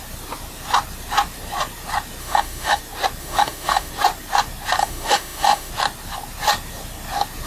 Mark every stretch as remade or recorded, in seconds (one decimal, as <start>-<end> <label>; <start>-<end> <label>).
0.0-2.2 recorded; 2.2-2.8 remade; 2.8-3.2 recorded; 3.2-3.9 remade; 3.9-4.8 recorded; 4.8-5.7 remade; 5.7-7.5 recorded